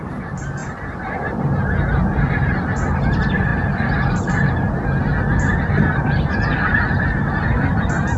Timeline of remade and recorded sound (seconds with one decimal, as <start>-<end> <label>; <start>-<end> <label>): 0.0-8.2 recorded